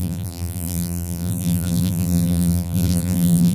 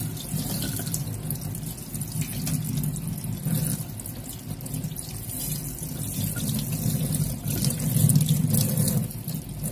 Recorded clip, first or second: second